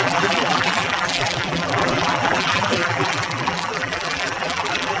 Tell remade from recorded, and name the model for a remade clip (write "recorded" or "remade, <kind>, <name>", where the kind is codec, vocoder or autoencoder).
remade, vocoder, BigVGAN v2